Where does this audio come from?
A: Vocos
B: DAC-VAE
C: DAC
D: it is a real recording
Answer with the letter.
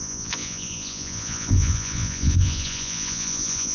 A